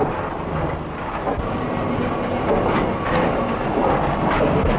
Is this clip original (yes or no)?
yes